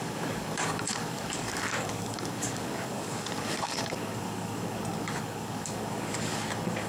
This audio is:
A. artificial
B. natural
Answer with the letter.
A